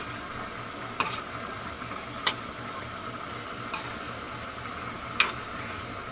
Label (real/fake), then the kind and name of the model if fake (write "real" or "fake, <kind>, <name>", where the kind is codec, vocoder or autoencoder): real